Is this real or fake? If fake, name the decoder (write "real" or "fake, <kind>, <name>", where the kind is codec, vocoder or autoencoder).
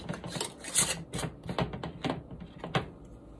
real